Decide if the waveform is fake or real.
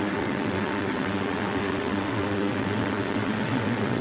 fake